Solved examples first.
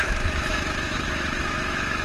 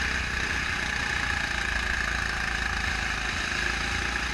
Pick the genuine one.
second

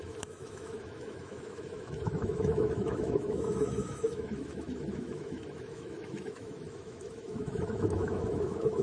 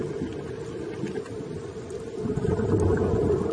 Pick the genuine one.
second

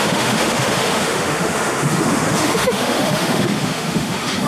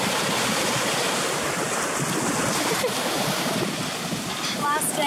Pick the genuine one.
second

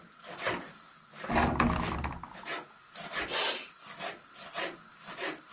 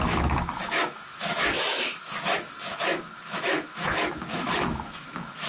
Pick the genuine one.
first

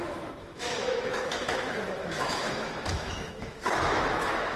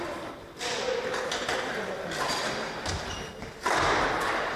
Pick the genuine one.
second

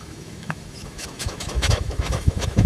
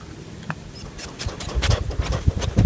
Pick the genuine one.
second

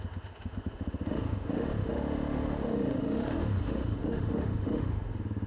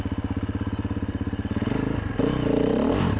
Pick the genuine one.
second